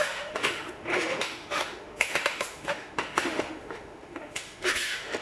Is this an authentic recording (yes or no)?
no